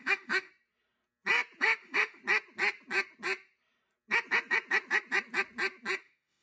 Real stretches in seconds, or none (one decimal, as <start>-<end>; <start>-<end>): 0.5-1.6; 2.2-6.0